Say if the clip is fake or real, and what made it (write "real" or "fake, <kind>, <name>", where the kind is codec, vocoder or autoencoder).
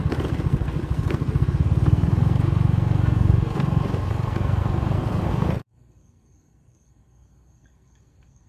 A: fake, codec, SNAC